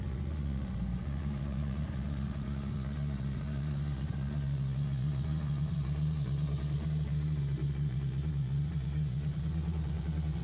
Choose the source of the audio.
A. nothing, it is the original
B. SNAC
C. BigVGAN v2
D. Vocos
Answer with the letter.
D